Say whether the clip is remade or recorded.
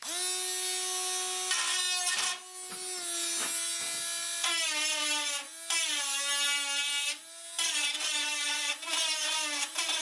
recorded